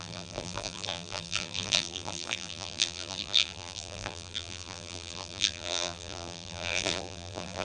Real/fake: fake